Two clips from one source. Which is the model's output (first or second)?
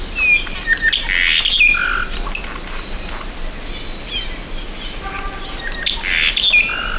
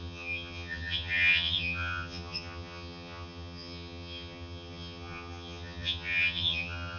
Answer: second